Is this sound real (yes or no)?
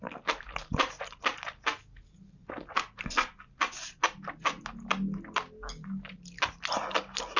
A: yes